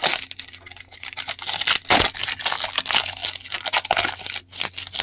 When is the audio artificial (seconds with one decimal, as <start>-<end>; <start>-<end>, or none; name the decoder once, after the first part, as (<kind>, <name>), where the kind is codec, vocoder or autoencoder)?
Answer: none